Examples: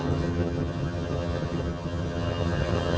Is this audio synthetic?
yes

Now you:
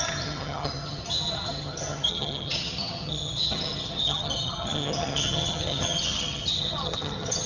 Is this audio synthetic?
yes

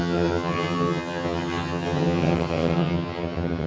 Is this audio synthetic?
yes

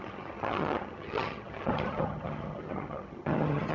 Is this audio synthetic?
yes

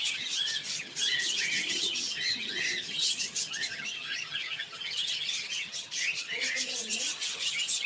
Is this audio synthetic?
yes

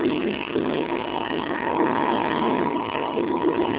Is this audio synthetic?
yes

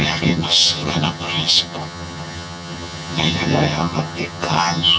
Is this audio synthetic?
yes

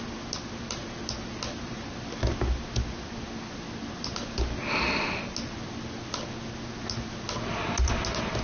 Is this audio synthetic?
no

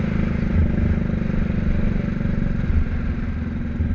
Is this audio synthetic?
no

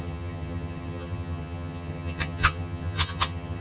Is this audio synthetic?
yes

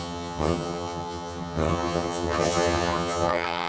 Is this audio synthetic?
yes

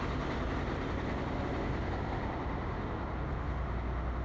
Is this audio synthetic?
no